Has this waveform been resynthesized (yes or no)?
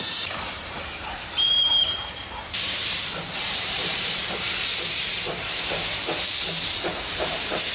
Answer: yes